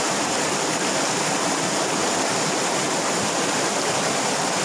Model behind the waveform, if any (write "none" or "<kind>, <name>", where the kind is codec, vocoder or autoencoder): none